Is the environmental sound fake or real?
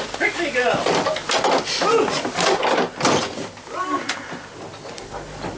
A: real